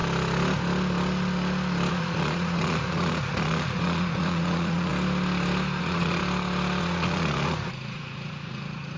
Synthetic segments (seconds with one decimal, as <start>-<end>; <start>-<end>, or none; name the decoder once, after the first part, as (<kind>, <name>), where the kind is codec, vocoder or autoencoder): 1.9-4.9 (vocoder, Vocos); 5.8-6.2; 6.8-9.0